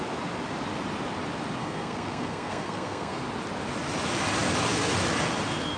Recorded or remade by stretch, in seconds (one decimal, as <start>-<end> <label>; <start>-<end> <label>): 0.0-1.6 recorded; 1.6-3.2 remade; 3.2-5.8 recorded